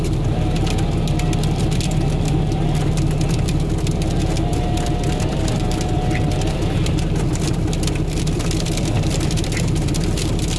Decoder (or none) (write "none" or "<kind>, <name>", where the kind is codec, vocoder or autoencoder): vocoder, BigVGAN v2